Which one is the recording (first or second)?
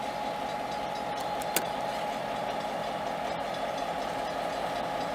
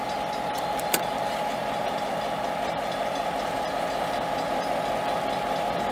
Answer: first